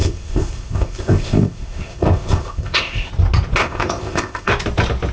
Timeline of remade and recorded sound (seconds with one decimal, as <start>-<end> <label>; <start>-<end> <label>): 0.0-3.1 remade; 3.1-3.6 recorded; 3.6-4.5 remade; 4.5-5.1 recorded